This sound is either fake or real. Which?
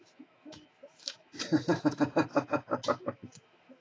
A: fake